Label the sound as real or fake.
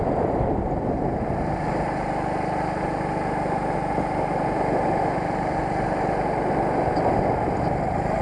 real